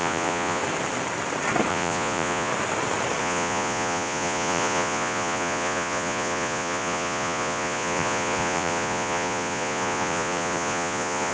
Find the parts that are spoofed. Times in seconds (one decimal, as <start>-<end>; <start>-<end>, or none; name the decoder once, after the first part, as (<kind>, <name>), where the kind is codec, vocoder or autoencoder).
0.0-0.6 (vocoder, Vocos); 1.7-2.5; 3.2-11.3